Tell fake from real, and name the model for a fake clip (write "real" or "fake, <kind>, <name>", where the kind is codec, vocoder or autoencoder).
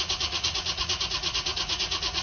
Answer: fake, vocoder, Vocos